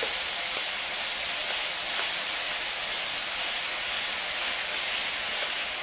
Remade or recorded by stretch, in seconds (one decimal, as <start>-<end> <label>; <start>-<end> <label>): 0.0-5.8 recorded